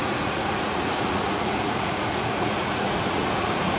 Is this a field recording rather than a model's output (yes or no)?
no